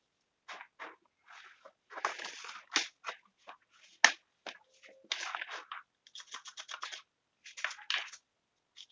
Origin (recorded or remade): recorded